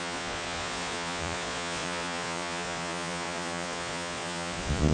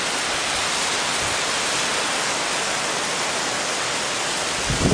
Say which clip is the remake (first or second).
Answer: first